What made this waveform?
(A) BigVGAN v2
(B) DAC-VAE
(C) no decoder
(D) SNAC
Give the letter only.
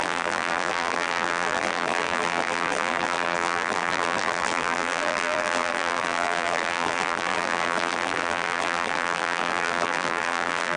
A